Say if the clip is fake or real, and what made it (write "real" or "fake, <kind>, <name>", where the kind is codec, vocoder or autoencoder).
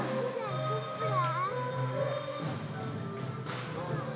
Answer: real